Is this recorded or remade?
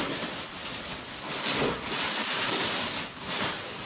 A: recorded